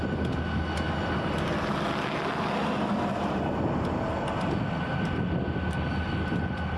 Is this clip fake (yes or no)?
no